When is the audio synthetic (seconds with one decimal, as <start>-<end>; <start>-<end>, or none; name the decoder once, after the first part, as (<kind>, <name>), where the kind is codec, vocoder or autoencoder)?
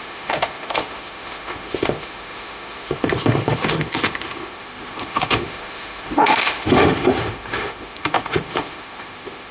0.0-9.5 (autoencoder, DAC-VAE)